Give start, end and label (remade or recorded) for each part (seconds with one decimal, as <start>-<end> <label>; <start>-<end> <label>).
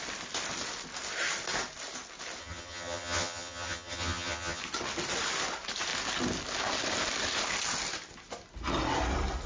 0.0-2.4 recorded; 2.4-4.6 remade; 4.6-9.5 recorded